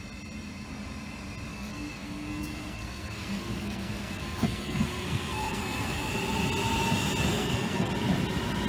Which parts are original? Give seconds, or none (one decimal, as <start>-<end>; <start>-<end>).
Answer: 0.0-1.5; 6.1-7.3; 7.9-8.7